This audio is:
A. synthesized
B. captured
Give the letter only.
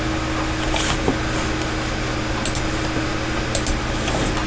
B